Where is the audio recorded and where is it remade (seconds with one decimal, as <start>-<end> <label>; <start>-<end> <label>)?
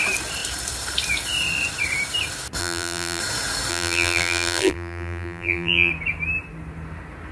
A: 0.0-2.6 recorded; 2.6-3.2 remade; 3.2-3.7 recorded; 3.7-5.9 remade; 5.9-7.3 recorded